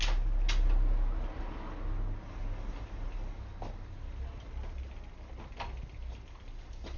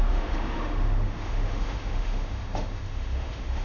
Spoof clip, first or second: second